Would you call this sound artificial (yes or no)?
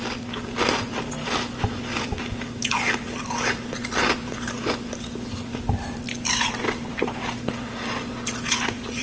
no